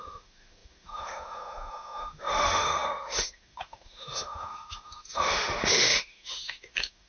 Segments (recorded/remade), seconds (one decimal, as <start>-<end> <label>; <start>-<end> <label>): 0.0-7.1 remade